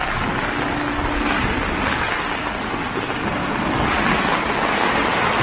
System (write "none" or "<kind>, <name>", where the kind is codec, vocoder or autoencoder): none